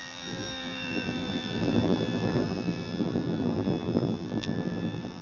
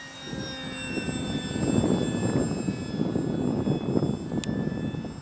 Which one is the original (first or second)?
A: second